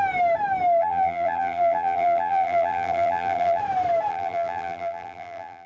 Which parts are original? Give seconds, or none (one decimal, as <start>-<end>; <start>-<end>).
0.0-0.8; 3.6-4.1